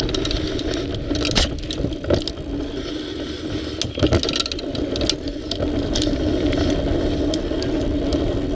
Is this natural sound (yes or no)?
yes